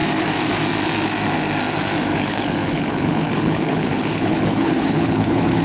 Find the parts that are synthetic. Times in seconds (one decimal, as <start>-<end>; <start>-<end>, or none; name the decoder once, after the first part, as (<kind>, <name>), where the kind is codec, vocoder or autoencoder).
2.1-5.6 (codec, HILCodec)